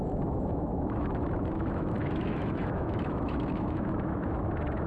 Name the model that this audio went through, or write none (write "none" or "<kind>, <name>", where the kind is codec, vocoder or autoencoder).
autoencoder, DAC-VAE